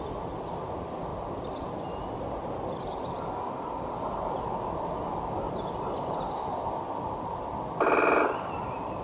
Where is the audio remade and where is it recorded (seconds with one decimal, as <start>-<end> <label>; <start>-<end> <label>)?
0.0-9.0 recorded